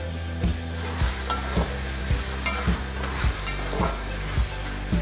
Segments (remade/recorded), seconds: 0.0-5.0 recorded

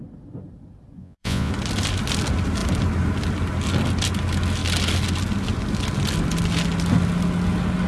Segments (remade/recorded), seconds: 0.0-1.0 recorded; 1.0-1.5 remade; 1.5-7.9 recorded

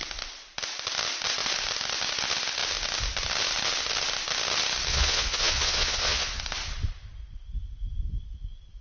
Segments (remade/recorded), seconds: 0.0-4.9 recorded; 4.9-6.4 remade; 6.4-8.8 recorded

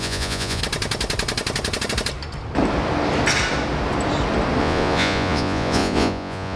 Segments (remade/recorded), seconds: 0.0-0.6 remade; 0.6-4.6 recorded; 4.6-6.6 remade

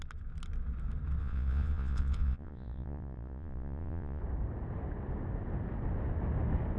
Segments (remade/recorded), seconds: 0.0-1.2 recorded; 1.2-4.2 remade; 4.2-6.8 recorded